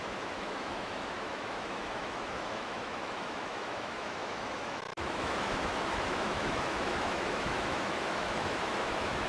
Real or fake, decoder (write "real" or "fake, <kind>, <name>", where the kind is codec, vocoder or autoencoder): fake, autoencoder, DAC-VAE